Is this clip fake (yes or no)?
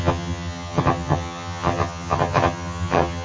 yes